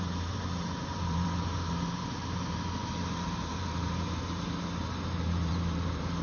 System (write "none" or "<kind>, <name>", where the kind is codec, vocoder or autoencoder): vocoder, BigVGAN v2